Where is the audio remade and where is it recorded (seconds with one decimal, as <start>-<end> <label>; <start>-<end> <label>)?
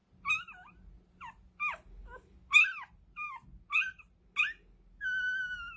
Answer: 0.0-5.8 recorded